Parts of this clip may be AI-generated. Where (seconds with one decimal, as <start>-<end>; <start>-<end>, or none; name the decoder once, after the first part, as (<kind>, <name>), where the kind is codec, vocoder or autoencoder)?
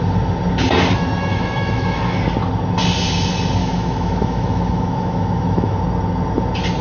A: 1.3-2.2 (autoencoder, DAC-VAE); 3.6-5.8